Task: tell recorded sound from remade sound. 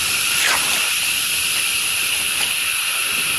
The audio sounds remade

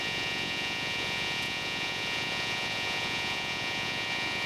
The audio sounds remade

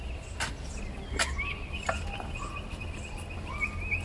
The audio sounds recorded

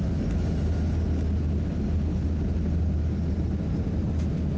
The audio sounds recorded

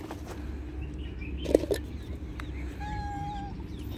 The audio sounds recorded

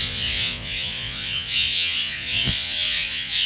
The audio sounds remade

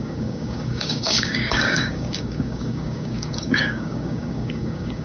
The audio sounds remade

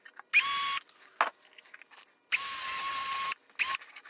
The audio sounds recorded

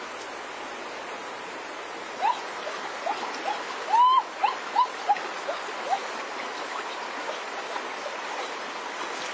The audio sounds recorded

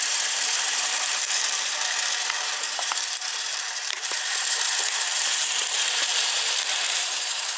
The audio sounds remade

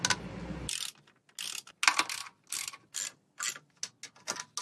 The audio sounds recorded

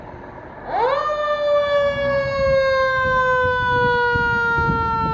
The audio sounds recorded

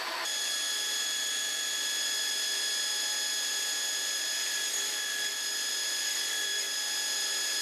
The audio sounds recorded